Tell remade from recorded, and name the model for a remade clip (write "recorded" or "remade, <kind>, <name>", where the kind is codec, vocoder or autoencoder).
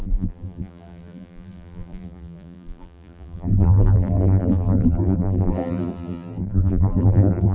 remade, vocoder, BigVGAN v2